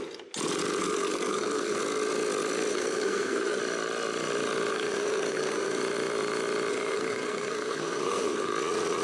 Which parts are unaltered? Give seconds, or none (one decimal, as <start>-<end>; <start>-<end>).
0.0-0.8; 1.8-2.7; 3.6-4.7; 5.8-6.7; 8.5-9.0